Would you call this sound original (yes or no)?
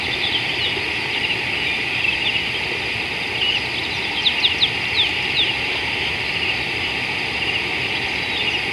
yes